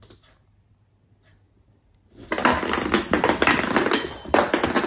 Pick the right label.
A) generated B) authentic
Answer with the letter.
B